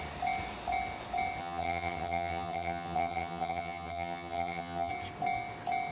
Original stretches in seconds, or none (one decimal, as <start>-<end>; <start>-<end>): 0.0-1.4; 4.9-5.9